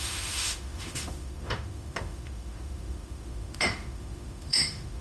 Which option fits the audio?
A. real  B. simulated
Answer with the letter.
B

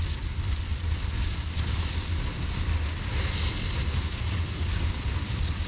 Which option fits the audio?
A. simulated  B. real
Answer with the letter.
B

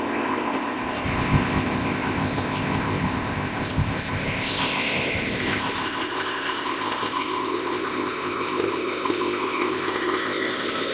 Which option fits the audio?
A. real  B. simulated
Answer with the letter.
B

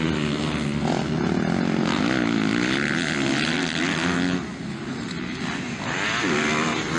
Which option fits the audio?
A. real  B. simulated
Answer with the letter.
A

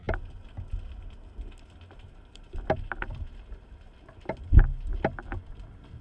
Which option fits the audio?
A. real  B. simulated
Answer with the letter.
A